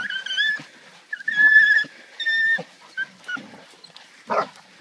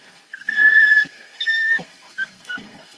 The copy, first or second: second